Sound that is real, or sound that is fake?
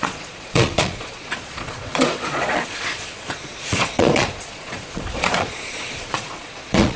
fake